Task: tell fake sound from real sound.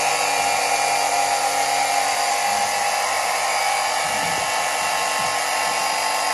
real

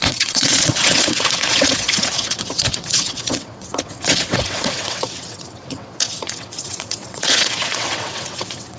fake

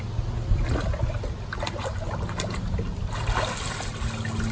real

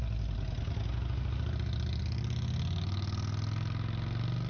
real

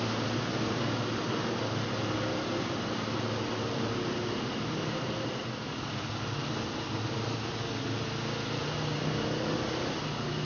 real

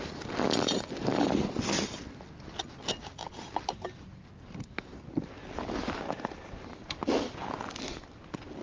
real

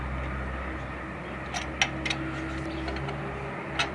real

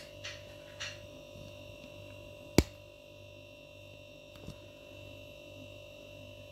real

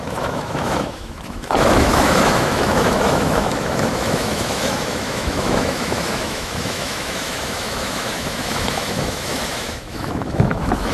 fake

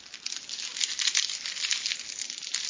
real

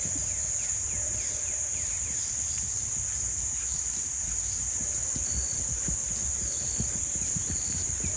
real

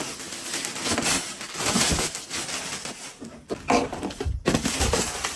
real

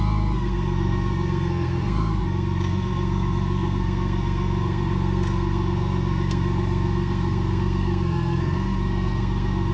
fake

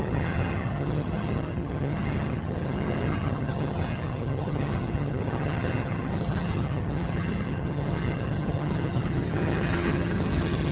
fake